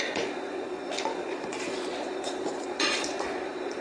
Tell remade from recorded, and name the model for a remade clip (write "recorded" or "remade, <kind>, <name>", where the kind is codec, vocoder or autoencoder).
remade, vocoder, Vocos